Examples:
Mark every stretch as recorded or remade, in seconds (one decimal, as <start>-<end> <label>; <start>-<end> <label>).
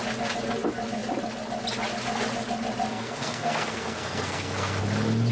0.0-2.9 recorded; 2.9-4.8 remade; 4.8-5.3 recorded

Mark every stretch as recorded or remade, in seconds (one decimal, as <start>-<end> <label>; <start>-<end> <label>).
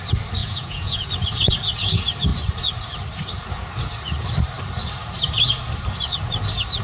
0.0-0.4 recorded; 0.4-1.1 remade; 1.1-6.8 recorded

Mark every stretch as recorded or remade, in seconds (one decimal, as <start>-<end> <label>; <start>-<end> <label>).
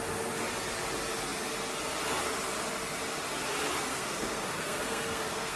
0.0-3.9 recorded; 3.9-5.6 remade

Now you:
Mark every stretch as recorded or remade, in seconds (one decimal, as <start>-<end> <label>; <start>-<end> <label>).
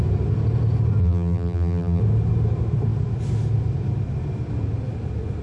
0.0-1.0 recorded; 1.0-2.0 remade; 2.0-5.4 recorded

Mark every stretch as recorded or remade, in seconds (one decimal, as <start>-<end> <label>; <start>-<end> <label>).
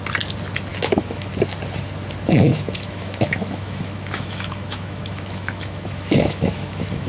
0.0-0.7 recorded; 0.7-1.3 remade; 1.3-2.5 recorded; 2.5-7.1 remade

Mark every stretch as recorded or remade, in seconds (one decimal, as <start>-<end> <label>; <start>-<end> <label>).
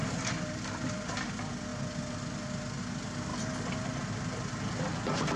0.0-1.1 remade; 1.1-5.4 recorded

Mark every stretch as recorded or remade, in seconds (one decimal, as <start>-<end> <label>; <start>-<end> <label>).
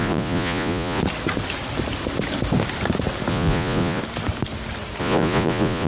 0.0-1.0 remade; 1.0-3.3 recorded; 3.3-4.0 remade; 4.0-5.0 recorded; 5.0-5.9 remade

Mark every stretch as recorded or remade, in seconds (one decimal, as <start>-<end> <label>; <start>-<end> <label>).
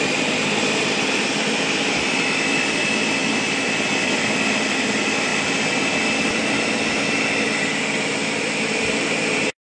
0.0-9.6 recorded